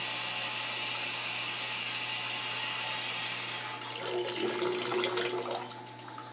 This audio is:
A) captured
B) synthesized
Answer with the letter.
A